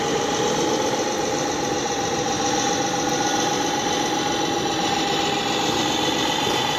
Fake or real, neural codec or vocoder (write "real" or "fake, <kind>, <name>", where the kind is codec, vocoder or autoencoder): real